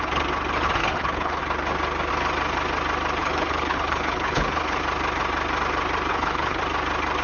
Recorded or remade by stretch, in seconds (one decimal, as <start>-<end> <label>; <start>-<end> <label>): 0.0-0.8 recorded; 0.8-1.4 remade; 1.4-3.2 recorded; 3.2-4.8 remade; 4.8-6.1 recorded; 6.1-6.6 remade; 6.6-7.2 recorded